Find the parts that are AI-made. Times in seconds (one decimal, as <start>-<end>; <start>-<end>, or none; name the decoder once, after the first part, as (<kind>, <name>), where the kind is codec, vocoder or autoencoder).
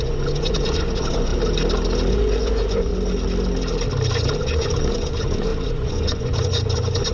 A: 0.0-1.3 (vocoder, Vocos); 2.1-2.9; 4.4-7.1